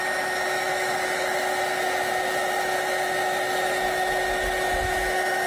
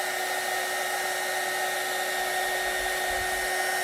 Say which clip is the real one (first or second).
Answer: second